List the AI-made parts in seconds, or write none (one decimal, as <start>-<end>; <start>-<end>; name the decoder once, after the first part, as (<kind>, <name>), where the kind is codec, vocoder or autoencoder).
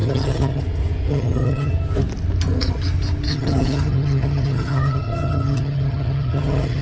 0.0-0.6 (vocoder, HiFi-GAN); 1.1-1.7; 3.3-6.8